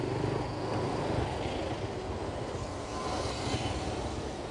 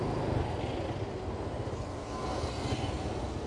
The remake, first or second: first